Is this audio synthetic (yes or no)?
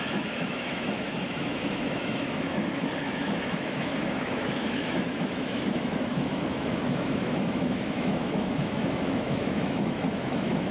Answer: yes